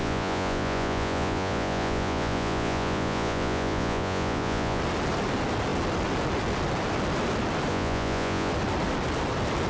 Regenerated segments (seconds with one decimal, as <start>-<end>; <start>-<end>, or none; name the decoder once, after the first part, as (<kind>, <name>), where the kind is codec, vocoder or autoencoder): 0.0-4.8 (vocoder, Vocos); 7.7-8.5